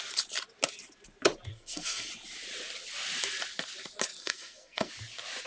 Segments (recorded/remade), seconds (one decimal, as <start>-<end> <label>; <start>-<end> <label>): 0.0-1.5 recorded; 1.5-2.1 remade; 2.1-4.2 recorded; 4.2-4.9 remade; 4.9-5.5 recorded